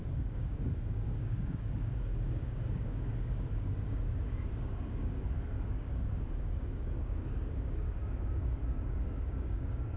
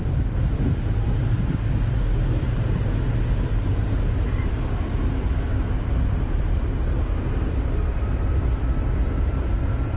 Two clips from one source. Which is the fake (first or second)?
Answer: first